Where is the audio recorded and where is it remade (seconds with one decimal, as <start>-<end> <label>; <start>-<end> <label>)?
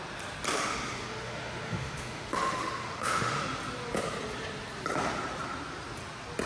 0.0-0.5 recorded; 0.5-3.4 remade; 3.4-6.5 recorded